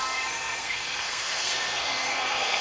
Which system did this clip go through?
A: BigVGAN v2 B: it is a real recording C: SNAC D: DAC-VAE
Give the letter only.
C